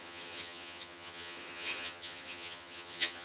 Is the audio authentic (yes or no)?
no